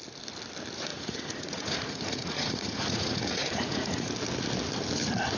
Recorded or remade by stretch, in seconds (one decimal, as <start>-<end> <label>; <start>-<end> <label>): 0.0-0.9 recorded; 0.9-4.1 remade; 4.1-5.4 recorded